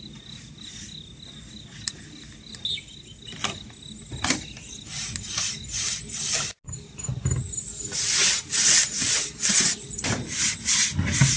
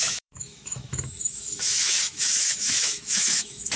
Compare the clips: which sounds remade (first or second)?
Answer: second